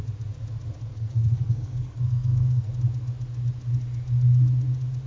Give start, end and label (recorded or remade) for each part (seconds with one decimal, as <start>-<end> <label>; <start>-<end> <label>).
0.0-0.9 recorded; 0.9-2.7 remade; 2.7-5.1 recorded